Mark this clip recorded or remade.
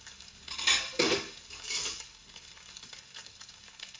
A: remade